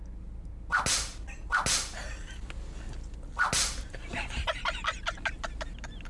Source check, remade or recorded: recorded